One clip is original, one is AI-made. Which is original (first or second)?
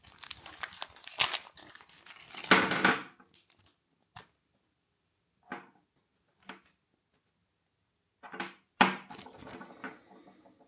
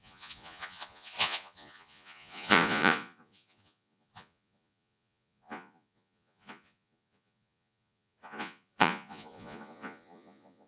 first